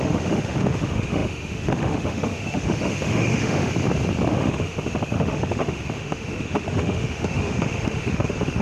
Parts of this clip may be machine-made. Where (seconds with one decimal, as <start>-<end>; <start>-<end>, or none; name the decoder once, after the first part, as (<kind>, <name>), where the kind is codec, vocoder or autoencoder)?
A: 0.0-3.7 (autoencoder, DAC-VAE); 4.3-8.6